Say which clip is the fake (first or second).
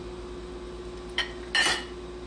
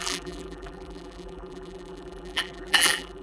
second